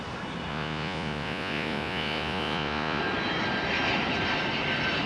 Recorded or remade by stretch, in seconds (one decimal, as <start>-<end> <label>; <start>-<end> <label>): 0.0-0.5 recorded; 0.5-3.0 remade; 3.0-5.1 recorded